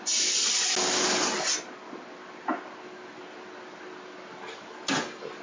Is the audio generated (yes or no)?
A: no